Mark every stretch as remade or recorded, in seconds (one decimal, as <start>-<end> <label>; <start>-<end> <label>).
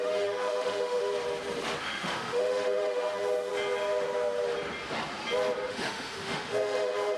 0.0-1.0 remade; 1.0-1.8 recorded; 1.8-3.5 remade; 3.5-5.7 recorded; 5.7-7.2 remade